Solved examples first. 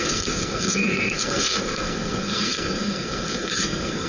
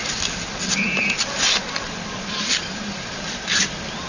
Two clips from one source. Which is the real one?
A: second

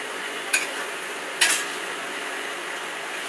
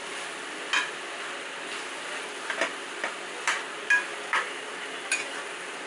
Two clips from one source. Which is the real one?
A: second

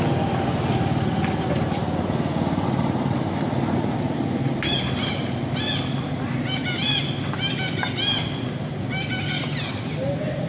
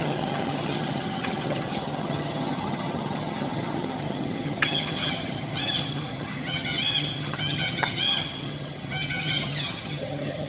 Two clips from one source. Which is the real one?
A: first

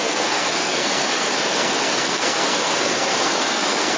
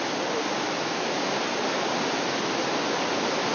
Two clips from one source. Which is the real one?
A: second